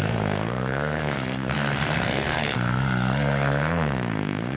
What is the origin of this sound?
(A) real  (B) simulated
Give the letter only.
B